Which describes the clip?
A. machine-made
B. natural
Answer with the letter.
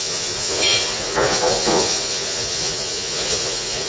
A